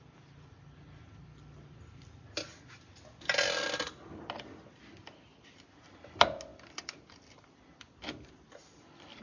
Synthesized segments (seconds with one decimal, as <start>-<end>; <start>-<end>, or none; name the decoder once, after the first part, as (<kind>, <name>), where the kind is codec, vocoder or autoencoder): none